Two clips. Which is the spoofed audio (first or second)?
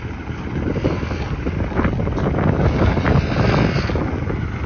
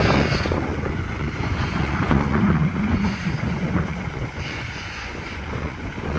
second